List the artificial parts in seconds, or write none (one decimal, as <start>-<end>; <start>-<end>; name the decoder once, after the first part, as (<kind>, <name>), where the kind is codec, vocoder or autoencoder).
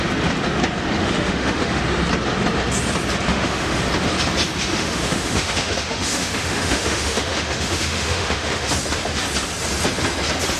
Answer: 1.0-1.8 (autoencoder, DAC-VAE); 3.3-3.8; 4.7-8.7